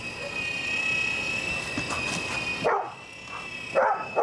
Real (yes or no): yes